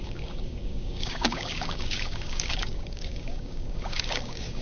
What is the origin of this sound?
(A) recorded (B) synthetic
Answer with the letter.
B